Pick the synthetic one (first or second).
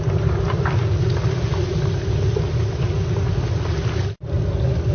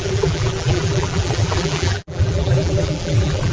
second